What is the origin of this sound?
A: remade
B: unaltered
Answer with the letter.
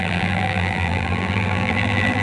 A